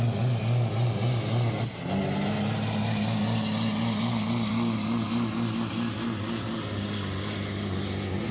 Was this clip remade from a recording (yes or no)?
no